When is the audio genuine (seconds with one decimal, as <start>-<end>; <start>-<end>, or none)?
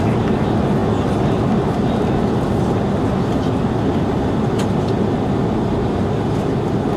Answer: 0.0-7.0